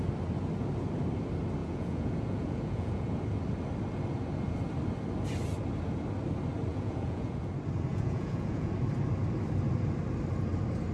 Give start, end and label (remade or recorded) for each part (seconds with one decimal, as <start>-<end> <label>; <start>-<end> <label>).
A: 0.0-1.6 recorded; 1.6-3.1 remade; 3.1-6.7 recorded; 6.7-7.5 remade; 7.5-7.9 recorded; 7.9-8.7 remade; 8.7-10.9 recorded